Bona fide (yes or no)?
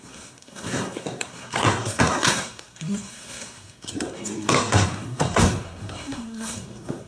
no